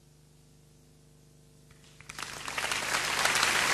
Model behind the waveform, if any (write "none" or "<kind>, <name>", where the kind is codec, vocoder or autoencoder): none